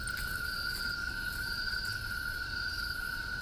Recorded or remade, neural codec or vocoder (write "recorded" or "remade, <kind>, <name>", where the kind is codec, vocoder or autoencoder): recorded